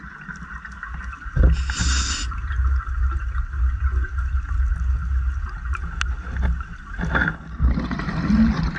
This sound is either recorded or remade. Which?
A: recorded